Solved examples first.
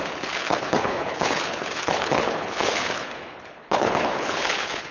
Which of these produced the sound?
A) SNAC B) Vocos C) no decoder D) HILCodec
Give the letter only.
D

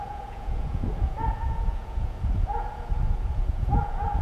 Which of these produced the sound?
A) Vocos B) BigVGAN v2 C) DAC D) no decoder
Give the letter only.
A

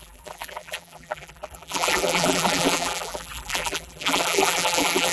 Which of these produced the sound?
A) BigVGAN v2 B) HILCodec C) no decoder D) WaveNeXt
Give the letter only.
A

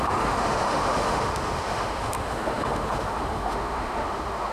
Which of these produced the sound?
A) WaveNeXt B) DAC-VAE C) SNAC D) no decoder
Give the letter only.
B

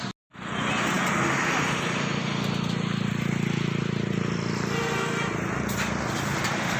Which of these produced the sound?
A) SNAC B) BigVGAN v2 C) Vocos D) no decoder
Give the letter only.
D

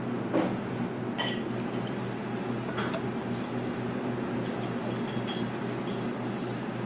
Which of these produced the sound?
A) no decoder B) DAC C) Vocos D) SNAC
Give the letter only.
A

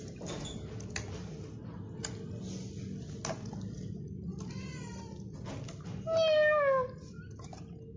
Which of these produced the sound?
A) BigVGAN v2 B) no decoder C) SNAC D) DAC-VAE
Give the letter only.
B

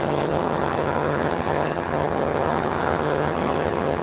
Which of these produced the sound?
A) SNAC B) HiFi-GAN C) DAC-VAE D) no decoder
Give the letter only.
B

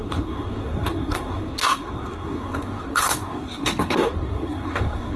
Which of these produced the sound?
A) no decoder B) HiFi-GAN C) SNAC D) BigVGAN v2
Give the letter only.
C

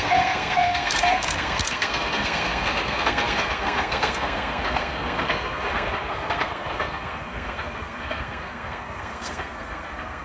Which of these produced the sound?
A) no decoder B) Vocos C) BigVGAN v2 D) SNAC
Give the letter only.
D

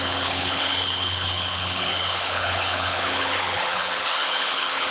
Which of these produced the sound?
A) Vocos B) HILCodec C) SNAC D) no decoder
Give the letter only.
B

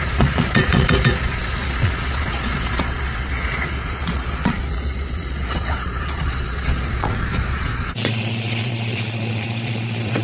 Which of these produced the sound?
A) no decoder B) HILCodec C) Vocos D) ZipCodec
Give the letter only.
C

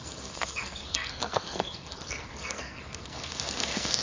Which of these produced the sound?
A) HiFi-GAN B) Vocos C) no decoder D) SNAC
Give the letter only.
D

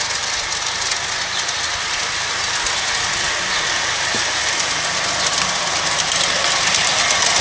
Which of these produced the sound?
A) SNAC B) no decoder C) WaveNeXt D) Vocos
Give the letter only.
B